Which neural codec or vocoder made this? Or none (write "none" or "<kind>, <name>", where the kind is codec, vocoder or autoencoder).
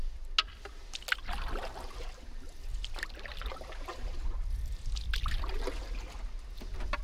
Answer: none